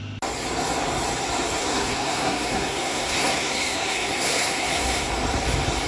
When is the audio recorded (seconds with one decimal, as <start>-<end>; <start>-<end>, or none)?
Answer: 0.0-1.6; 5.1-5.9